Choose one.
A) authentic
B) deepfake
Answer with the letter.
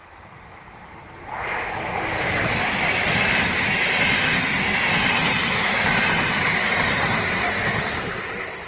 A